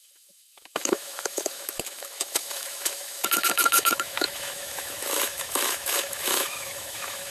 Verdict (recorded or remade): remade